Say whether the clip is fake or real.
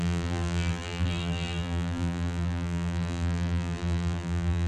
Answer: fake